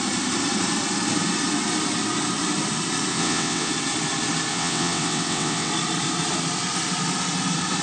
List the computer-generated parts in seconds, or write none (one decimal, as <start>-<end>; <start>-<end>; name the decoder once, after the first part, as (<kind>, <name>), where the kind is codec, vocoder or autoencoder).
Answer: 3.1-3.7 (vocoder, WaveNeXt); 4.5-5.7